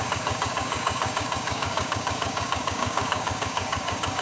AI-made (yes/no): yes